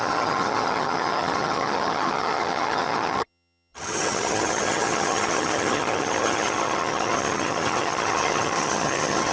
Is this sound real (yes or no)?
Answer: no